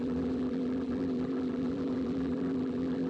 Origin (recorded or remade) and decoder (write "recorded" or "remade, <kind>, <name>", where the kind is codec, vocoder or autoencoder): remade, vocoder, BigVGAN v2